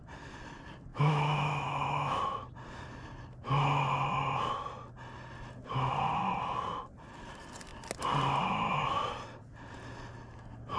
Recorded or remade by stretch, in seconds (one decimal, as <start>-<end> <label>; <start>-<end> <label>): 0.0-0.9 recorded; 0.9-2.2 remade; 2.2-10.8 recorded